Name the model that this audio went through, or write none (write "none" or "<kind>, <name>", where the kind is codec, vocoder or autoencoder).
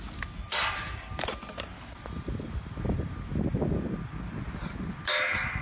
none